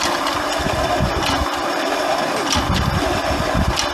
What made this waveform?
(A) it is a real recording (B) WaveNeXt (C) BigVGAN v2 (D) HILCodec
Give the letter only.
A